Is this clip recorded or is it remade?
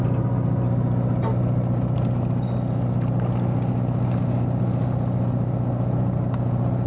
recorded